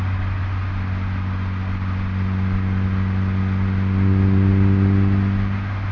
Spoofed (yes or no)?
no